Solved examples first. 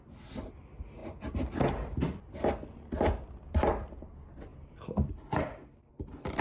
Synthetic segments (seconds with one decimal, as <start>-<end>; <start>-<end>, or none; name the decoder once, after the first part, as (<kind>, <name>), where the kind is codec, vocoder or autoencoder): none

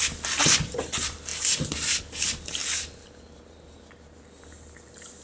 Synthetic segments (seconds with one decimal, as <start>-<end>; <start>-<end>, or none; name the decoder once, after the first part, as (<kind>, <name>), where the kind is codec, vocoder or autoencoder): none

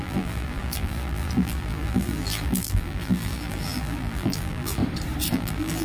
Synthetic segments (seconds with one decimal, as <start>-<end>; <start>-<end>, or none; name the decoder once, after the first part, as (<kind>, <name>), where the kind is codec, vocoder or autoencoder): 0.0-4.8 (vocoder, BigVGAN v2); 5.3-5.8

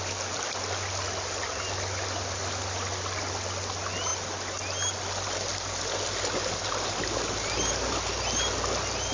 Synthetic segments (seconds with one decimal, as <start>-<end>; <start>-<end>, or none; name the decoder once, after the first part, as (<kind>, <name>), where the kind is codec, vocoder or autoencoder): none

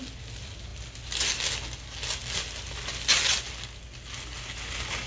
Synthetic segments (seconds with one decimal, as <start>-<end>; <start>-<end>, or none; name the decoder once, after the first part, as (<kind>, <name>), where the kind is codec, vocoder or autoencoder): none

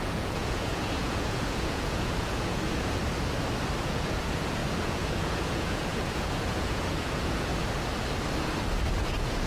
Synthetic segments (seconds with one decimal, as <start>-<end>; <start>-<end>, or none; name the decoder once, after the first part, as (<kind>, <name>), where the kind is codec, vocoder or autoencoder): 0.0-3.0 (vocoder, Vocos); 3.8-7.5; 9.0-9.5